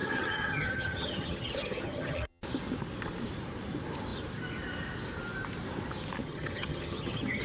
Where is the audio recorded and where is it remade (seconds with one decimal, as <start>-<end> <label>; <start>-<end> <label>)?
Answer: 0.0-2.4 remade; 2.4-6.2 recorded; 6.2-7.4 remade

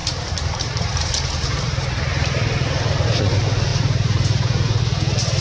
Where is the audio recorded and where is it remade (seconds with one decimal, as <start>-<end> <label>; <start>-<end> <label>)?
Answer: 0.0-3.2 remade; 3.2-3.7 recorded; 3.7-4.8 remade; 4.8-5.4 recorded

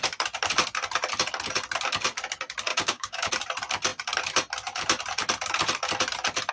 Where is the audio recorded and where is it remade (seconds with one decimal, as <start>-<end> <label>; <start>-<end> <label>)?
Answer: 0.0-2.7 recorded; 2.7-3.3 remade; 3.3-6.5 recorded

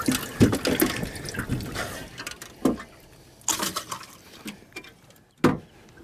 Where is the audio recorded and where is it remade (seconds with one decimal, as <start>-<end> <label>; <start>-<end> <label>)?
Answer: 0.0-6.0 recorded